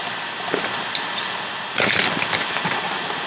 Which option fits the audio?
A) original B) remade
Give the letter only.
A